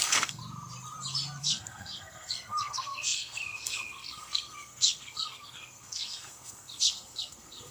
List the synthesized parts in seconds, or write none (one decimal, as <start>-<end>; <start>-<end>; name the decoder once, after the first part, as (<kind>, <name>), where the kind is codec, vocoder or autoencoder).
0.0-0.4 (codec, SNAC); 1.4-7.7